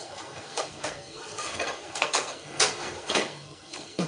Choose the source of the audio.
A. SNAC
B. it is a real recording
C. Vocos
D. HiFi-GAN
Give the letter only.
A